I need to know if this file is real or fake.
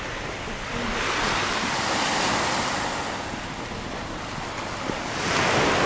real